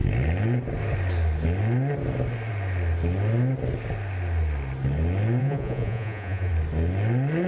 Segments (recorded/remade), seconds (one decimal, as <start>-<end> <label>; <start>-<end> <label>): 0.0-5.4 recorded; 5.4-6.5 remade; 6.5-7.5 recorded